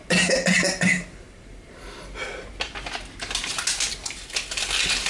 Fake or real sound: real